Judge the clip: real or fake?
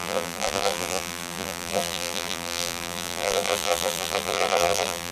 fake